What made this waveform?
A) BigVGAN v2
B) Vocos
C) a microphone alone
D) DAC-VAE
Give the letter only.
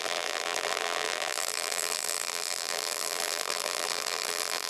A